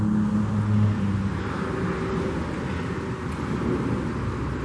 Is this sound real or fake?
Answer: real